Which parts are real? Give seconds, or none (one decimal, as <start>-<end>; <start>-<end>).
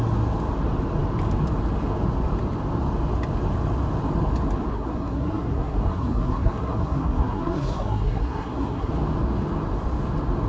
0.0-4.7; 8.9-10.5